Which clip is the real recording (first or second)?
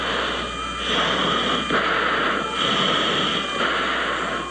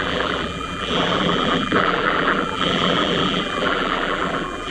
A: first